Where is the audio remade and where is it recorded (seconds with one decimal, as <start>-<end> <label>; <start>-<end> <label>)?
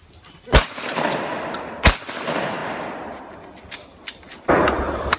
0.0-5.2 recorded